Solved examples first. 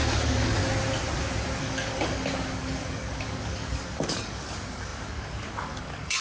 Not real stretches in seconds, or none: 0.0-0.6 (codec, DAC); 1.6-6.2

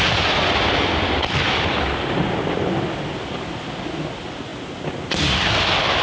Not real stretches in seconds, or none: none

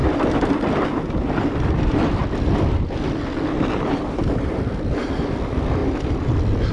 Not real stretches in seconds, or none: none

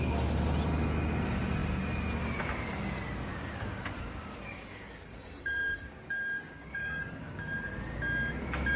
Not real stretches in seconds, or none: 3.3-7.4 (codec, DAC)

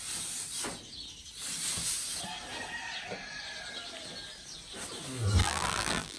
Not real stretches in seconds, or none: 5.4-6.2 (vocoder, BigVGAN v2)